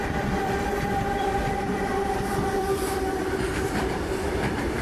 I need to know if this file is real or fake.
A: fake